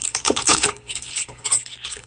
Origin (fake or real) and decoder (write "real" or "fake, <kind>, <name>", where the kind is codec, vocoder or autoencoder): fake, codec, HILCodec